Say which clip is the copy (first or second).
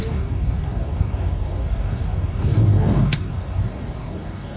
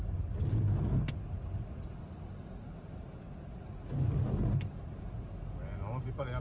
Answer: first